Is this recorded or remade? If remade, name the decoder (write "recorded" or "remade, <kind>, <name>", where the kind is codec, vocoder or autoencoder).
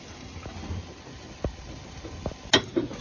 recorded